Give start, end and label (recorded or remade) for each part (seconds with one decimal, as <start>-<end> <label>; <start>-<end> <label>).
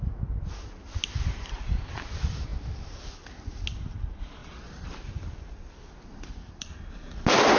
0.0-4.4 recorded; 4.4-6.8 remade; 6.8-7.6 recorded